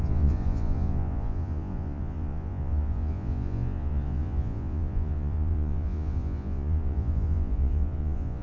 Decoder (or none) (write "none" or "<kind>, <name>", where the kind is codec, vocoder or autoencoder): vocoder, Vocos